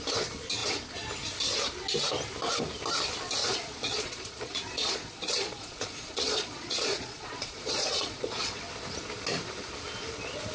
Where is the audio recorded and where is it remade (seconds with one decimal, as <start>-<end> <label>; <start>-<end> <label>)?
0.0-3.4 recorded; 3.4-8.6 remade; 8.6-10.5 recorded